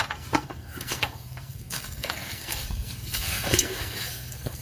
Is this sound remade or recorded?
remade